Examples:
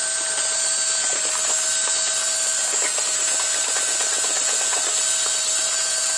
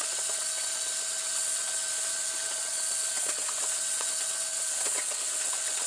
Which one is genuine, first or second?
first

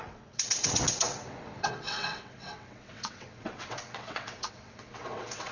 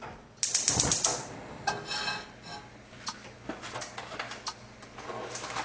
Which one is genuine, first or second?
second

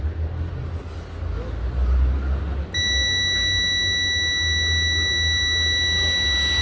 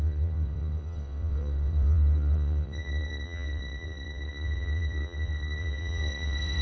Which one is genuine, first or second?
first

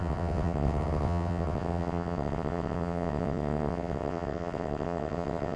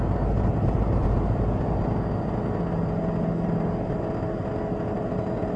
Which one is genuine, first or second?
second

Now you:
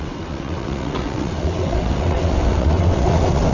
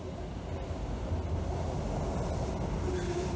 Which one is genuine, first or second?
second